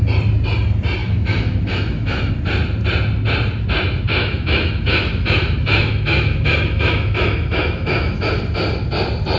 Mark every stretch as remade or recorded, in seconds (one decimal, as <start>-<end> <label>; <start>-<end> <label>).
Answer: 0.0-1.0 recorded; 1.0-2.3 remade; 2.3-4.2 recorded; 4.2-8.3 remade; 8.3-9.4 recorded